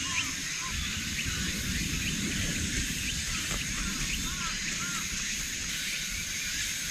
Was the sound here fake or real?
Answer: real